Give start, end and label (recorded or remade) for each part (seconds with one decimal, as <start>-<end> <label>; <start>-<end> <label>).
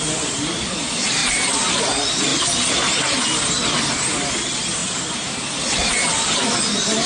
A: 0.0-1.2 remade; 1.2-1.8 recorded; 1.8-2.3 remade; 2.3-4.3 recorded; 4.3-4.8 remade; 4.8-6.3 recorded; 6.3-7.1 remade